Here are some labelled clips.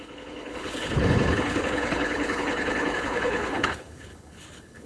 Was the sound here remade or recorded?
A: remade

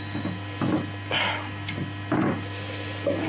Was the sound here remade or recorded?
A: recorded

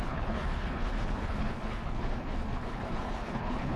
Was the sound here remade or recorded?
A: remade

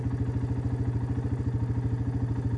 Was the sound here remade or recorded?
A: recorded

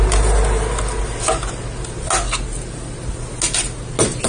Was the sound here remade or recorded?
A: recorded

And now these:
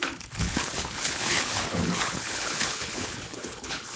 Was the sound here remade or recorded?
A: remade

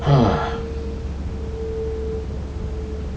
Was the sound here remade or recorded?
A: recorded